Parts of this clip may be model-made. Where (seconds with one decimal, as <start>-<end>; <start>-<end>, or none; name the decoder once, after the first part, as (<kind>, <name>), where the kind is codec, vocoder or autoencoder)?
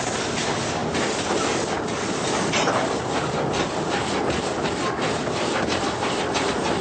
none